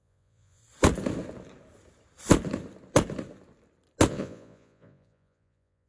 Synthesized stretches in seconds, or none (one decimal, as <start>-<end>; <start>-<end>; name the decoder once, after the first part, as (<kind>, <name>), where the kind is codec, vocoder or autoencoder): 0.0-0.6 (vocoder, Vocos); 4.1-5.9